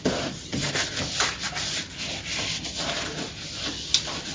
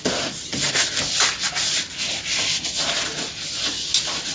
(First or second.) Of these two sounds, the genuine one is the second